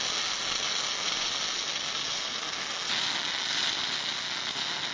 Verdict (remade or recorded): recorded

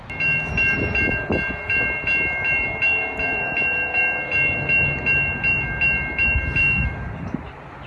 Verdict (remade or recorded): recorded